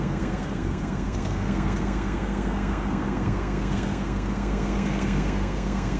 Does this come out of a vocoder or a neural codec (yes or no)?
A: yes